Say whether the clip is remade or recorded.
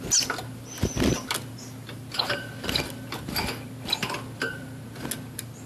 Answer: recorded